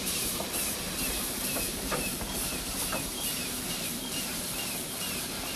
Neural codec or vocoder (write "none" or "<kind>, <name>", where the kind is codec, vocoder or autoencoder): vocoder, BigVGAN v2